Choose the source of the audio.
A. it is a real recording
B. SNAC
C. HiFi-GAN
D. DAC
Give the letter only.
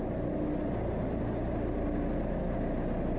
A